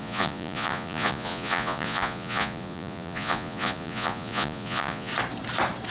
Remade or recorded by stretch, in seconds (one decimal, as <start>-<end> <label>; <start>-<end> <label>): 0.0-5.1 remade; 5.1-5.9 recorded